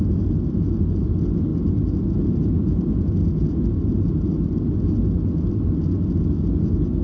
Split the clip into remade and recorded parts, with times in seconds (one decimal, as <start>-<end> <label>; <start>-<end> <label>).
0.0-7.0 recorded